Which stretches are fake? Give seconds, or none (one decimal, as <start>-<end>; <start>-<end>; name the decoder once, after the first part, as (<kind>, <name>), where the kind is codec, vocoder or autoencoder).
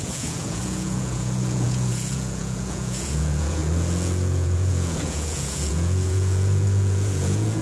0.0-7.6 (vocoder, Vocos)